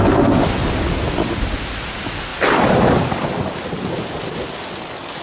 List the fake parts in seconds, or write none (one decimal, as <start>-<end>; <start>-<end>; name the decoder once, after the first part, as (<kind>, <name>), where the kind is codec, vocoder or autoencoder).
none